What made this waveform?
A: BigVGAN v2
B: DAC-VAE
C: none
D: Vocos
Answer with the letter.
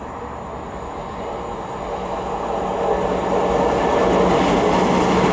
C